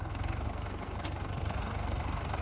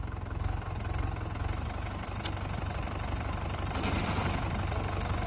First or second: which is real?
second